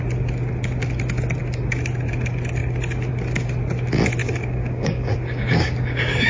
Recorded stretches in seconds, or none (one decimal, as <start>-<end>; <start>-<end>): 0.0-4.2